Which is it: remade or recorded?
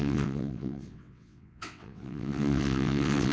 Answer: remade